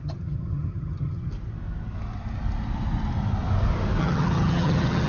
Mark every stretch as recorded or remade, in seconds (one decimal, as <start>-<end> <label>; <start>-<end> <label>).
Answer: 0.0-1.3 remade; 1.3-4.0 recorded; 4.0-5.1 remade